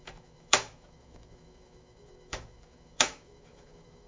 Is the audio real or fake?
fake